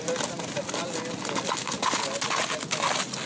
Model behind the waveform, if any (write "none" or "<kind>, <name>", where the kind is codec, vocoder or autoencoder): none